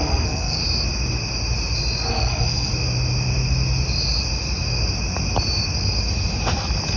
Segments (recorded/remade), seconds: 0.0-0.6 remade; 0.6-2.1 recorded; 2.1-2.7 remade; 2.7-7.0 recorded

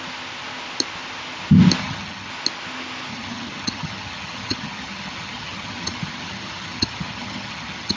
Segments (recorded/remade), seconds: 0.0-1.8 recorded; 1.8-2.3 remade; 2.3-3.1 recorded; 3.1-8.0 remade

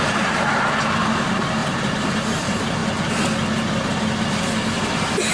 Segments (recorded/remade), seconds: 0.0-1.6 recorded; 1.6-2.1 remade; 2.1-5.3 recorded

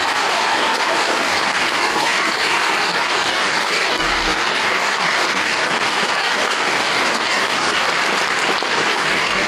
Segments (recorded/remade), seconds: 0.0-7.9 remade; 7.9-8.7 recorded; 8.7-9.5 remade

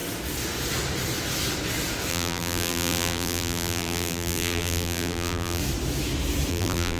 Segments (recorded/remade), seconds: 0.0-2.1 recorded; 2.1-5.6 remade; 5.6-6.5 recorded; 6.5-7.0 remade

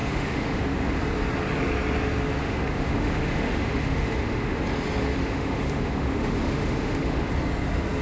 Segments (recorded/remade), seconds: 0.0-1.0 remade; 1.0-2.4 recorded; 2.4-4.6 remade; 4.6-5.2 recorded; 5.2-7.3 remade; 7.3-8.0 recorded

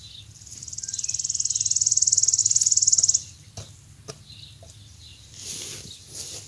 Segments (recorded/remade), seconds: 0.0-6.5 recorded

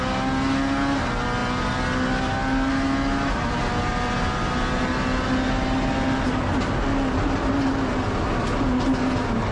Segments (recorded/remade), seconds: 0.0-9.5 recorded